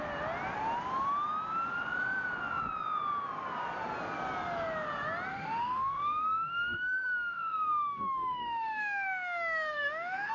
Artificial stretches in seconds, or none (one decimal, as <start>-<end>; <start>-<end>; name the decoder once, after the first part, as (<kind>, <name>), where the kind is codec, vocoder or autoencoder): 5.3-10.3 (autoencoder, DAC-VAE)